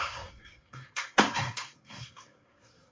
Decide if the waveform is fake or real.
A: fake